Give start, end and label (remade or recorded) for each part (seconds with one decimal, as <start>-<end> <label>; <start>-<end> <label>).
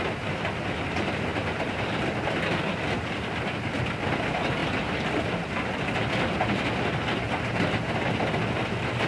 0.0-9.1 recorded